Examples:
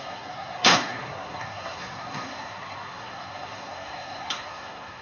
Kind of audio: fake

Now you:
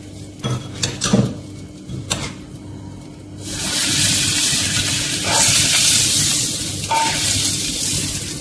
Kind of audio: real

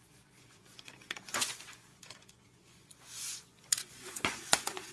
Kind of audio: fake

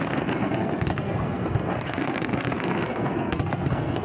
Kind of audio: fake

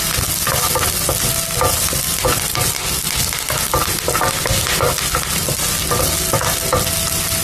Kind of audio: real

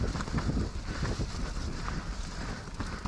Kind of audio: real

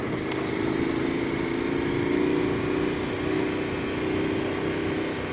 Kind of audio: real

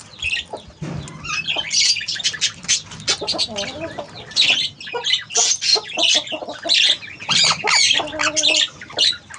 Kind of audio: real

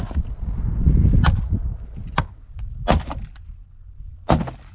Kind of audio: real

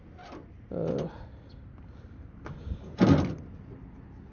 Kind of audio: real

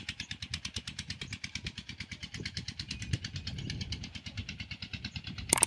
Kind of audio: fake